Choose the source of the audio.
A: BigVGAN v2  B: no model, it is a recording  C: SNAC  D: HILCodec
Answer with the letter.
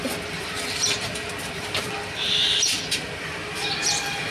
A